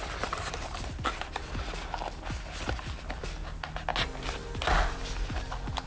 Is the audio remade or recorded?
recorded